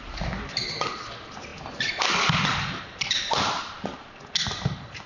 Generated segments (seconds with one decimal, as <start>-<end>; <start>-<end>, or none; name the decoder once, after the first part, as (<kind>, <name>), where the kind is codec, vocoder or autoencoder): none